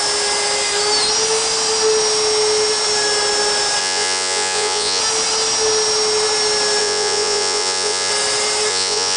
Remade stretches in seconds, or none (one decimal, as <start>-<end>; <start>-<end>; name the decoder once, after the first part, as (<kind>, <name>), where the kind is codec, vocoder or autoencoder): 3.8-5.0 (vocoder, Vocos); 6.8-8.1; 8.7-9.2